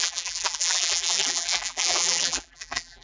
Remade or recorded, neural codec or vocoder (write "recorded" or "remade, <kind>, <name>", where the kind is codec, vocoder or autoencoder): remade, vocoder, BigVGAN v2